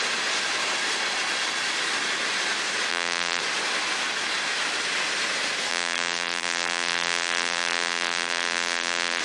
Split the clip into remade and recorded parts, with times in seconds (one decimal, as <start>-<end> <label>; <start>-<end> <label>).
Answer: 0.0-2.9 recorded; 2.9-3.4 remade; 3.4-5.7 recorded; 5.7-9.2 remade